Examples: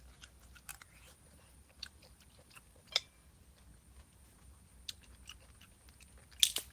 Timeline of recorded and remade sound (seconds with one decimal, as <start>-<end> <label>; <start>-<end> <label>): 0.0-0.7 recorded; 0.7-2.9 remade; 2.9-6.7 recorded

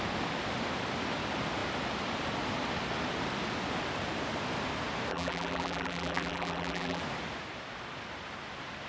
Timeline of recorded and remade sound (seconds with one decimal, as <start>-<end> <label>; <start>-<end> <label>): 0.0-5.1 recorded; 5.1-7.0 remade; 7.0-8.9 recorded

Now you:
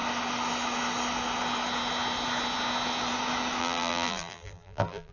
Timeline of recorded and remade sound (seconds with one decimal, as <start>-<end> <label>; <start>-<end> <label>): 0.0-3.6 recorded; 3.6-5.1 remade

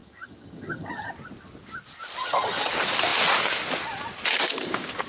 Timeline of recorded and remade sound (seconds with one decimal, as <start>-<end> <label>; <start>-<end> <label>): 0.0-1.1 remade; 1.1-2.2 recorded; 2.2-2.7 remade; 2.7-5.1 recorded